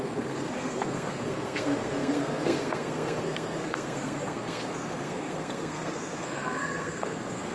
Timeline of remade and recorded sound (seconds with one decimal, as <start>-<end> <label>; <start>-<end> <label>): 0.0-7.5 remade